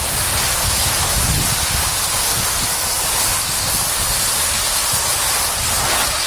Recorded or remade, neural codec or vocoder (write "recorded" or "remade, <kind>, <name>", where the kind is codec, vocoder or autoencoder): recorded